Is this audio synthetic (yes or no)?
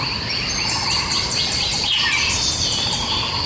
no